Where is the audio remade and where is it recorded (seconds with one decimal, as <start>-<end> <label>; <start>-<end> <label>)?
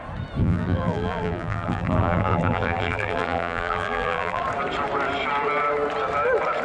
0.0-0.4 recorded; 0.4-4.4 remade; 4.4-6.6 recorded